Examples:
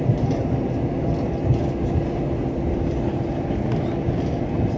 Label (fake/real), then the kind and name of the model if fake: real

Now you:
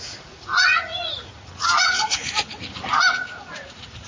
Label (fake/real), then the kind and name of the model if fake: fake, vocoder, Vocos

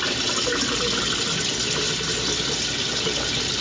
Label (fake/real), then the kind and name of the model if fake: real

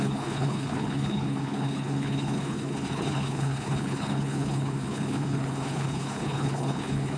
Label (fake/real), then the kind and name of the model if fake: fake, codec, HILCodec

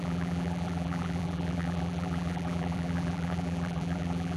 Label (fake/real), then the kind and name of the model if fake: fake, vocoder, BigVGAN v2